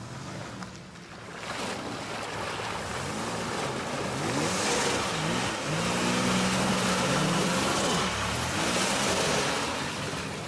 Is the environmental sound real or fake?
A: real